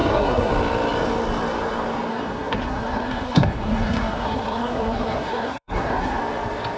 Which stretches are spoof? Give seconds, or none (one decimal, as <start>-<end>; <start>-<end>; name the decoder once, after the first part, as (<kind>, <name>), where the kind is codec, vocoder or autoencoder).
0.0-0.5 (codec, SNAC); 2.1-6.2